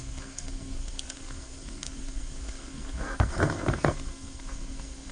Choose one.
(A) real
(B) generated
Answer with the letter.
B